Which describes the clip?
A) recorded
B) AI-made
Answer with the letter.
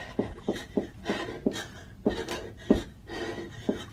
A